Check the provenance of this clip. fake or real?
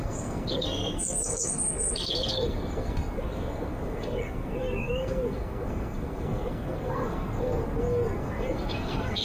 fake